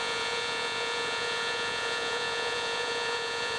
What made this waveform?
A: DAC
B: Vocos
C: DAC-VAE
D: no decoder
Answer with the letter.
B